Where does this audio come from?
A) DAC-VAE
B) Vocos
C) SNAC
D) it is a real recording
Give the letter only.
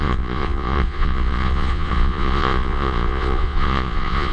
B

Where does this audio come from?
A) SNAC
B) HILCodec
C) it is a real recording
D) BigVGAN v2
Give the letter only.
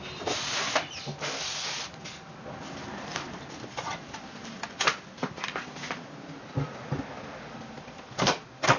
C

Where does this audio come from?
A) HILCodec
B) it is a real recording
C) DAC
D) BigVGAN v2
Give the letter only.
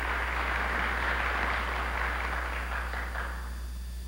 B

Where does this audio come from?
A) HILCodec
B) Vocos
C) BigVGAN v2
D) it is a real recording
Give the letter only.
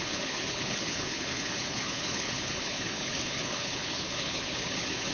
A